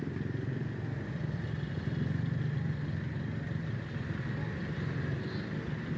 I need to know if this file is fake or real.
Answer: real